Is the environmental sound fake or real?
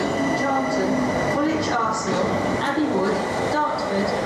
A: real